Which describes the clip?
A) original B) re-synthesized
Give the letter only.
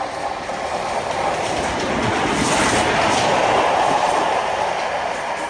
A